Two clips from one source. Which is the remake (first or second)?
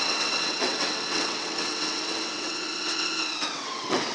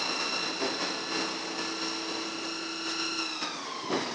first